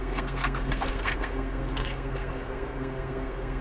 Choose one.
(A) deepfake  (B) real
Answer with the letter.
A